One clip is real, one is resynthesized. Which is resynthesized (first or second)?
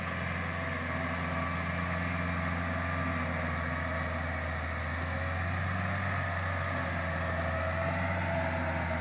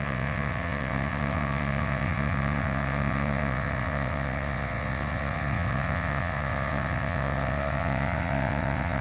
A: second